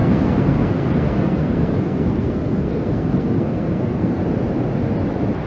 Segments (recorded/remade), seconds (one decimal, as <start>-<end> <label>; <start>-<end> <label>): 0.0-4.2 remade; 4.2-5.5 recorded